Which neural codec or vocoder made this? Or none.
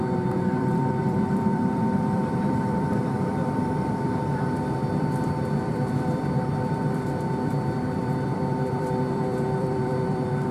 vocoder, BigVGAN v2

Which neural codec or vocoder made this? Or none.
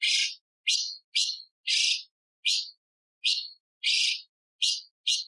none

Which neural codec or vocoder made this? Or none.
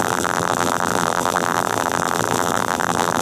vocoder, BigVGAN v2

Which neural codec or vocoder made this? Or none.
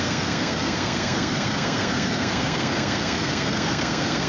codec, SNAC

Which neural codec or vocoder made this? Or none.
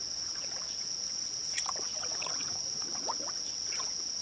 vocoder, WaveNeXt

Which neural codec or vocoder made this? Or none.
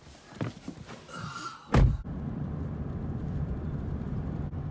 none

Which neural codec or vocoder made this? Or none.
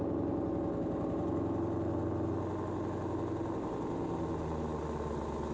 none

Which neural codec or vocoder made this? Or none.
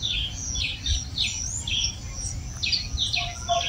none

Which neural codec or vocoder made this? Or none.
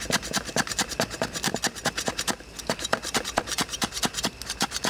none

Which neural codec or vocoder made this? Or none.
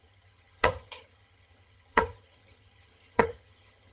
vocoder, HiFi-GAN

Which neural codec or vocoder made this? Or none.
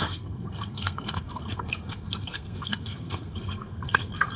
codec, SNAC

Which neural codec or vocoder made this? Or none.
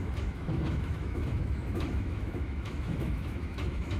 autoencoder, DAC-VAE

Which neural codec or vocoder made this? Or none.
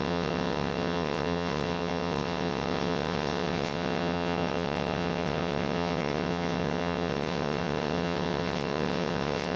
vocoder, WaveNeXt